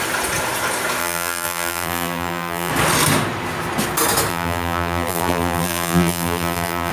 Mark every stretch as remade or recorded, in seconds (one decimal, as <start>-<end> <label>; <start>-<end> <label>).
0.0-1.0 recorded; 1.0-2.7 remade; 2.7-4.3 recorded; 4.3-6.9 remade

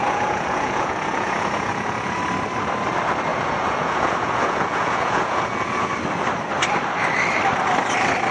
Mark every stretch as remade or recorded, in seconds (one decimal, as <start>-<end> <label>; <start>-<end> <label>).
0.0-2.2 remade; 2.2-3.3 recorded; 3.3-5.9 remade; 5.9-8.3 recorded